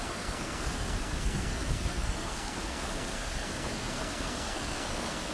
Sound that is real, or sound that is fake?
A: fake